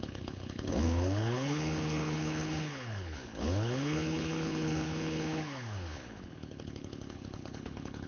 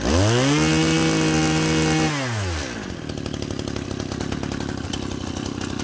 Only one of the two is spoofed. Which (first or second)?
first